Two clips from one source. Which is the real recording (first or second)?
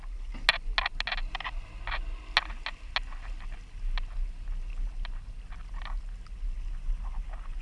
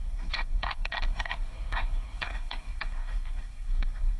first